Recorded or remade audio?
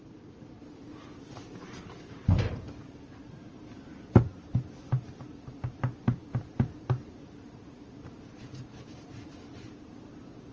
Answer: remade